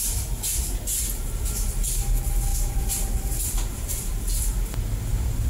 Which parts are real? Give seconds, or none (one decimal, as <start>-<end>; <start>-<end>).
0.0-2.5; 4.2-5.5